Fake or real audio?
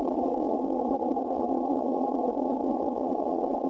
fake